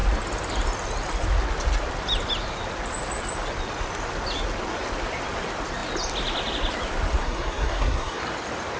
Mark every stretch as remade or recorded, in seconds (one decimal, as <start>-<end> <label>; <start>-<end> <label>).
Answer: 0.0-7.2 recorded; 7.2-8.2 remade; 8.2-8.8 recorded